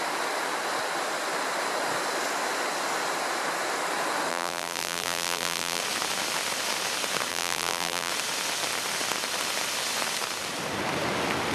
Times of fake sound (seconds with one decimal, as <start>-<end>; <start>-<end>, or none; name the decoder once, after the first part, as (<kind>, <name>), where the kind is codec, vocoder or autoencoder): 4.3-5.8 (vocoder, BigVGAN v2); 7.3-8.1